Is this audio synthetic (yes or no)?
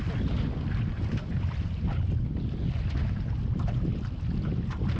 no